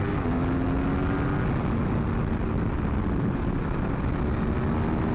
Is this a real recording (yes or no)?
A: yes